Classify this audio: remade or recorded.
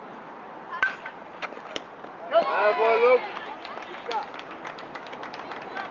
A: recorded